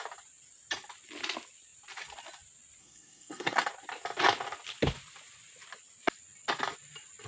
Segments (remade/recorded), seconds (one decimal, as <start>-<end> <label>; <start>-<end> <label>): 0.0-2.8 recorded; 2.8-3.7 remade; 3.7-7.3 recorded